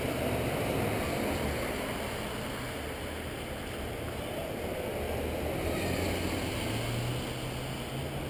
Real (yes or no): yes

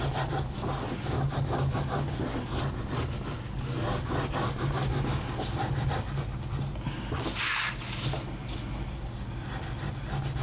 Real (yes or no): yes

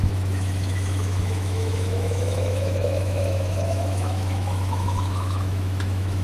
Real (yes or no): no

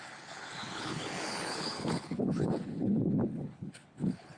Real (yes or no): no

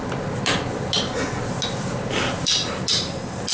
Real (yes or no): yes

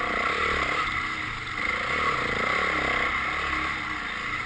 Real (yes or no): yes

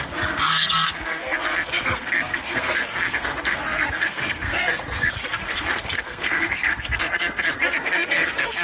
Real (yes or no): no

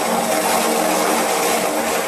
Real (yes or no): yes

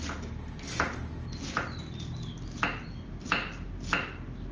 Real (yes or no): yes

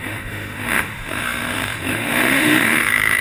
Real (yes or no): no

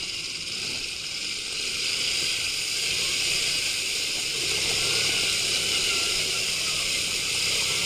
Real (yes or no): no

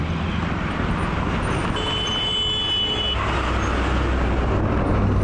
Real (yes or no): yes